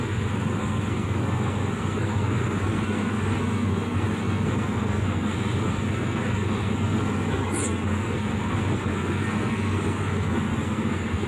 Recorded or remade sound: remade